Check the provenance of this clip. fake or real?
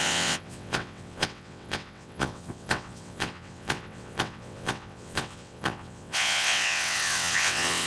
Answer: fake